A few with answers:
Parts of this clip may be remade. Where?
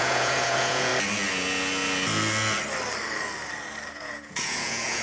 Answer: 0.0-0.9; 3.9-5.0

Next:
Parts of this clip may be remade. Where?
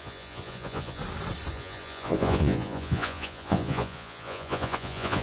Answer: 0.0-1.0; 1.5-5.2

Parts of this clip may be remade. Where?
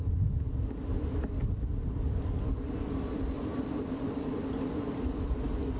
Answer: none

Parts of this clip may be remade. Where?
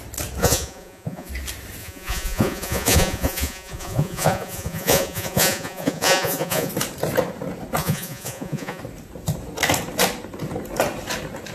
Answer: 0.4-1.3; 1.8-6.7; 7.8-8.8